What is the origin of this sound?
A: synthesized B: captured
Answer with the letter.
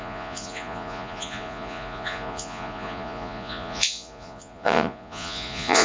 A